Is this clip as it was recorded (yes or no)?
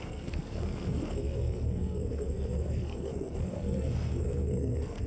no